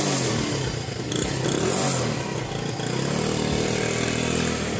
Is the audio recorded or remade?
recorded